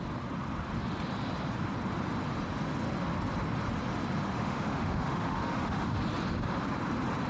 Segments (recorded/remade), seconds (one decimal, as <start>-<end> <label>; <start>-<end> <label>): 0.0-4.4 recorded; 4.4-5.9 remade; 5.9-7.3 recorded